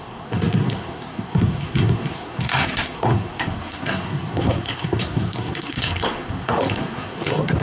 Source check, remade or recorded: remade